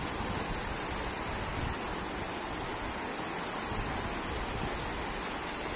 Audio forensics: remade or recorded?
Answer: recorded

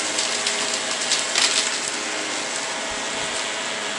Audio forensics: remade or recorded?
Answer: recorded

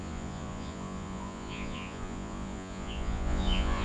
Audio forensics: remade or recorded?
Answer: remade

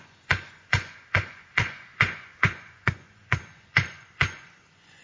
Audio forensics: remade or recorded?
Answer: remade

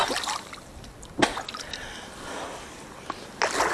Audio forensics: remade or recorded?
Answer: recorded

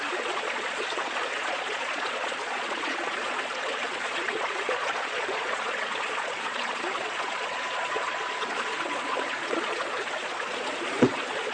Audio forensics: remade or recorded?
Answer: remade